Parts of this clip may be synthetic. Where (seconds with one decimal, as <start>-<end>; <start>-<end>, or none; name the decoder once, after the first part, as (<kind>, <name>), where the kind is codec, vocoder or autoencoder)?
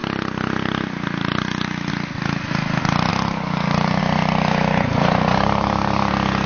3.1-4.0 (codec, DAC); 5.3-6.1